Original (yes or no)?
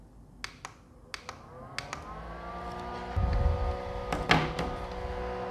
yes